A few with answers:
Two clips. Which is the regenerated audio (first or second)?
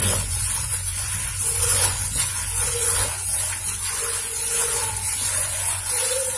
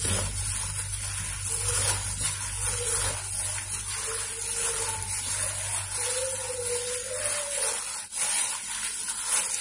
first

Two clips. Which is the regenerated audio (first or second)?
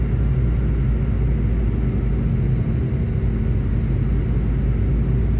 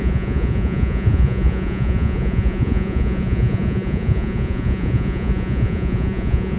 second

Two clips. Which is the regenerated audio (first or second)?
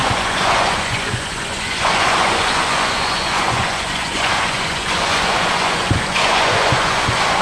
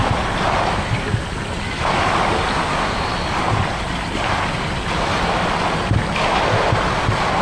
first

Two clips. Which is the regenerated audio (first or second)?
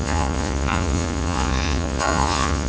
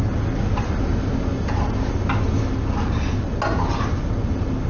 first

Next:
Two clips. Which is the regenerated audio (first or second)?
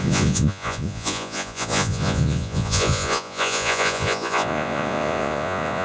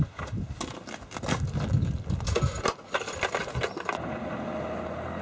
first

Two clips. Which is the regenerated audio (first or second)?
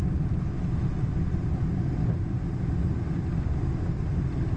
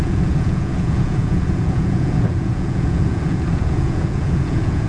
second